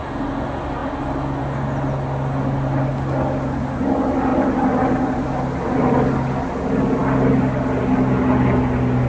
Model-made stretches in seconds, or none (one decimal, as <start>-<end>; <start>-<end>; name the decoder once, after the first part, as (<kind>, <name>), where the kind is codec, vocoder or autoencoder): none